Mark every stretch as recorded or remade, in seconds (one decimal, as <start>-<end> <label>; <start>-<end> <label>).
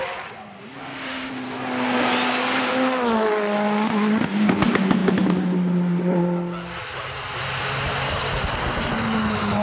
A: 0.0-0.8 recorded; 0.8-1.3 remade; 1.3-9.6 recorded